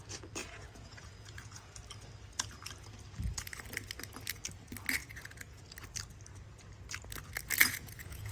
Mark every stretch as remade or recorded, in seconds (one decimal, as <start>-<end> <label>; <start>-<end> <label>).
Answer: 0.0-0.4 recorded; 0.4-1.7 remade; 1.7-5.0 recorded; 5.0-5.6 remade; 5.6-7.6 recorded; 7.6-8.3 remade